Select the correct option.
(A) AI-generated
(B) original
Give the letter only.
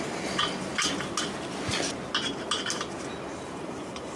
B